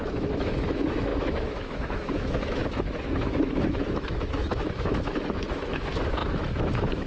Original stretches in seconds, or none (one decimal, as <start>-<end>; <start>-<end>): none